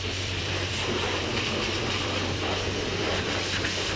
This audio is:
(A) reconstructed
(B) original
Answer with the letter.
A